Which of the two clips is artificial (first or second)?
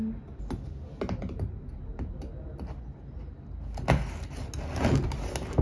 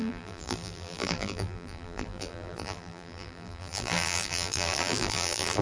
second